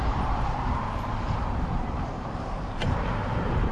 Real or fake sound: fake